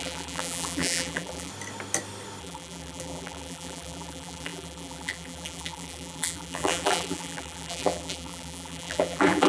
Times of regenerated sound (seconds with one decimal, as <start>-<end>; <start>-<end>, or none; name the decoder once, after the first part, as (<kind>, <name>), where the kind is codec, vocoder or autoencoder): 0.0-1.5 (vocoder, BigVGAN v2); 2.4-9.5